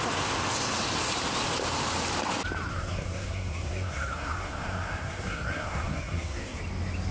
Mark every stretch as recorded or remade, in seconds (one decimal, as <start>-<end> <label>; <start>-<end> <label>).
0.0-2.7 recorded; 2.7-6.6 remade; 6.6-7.1 recorded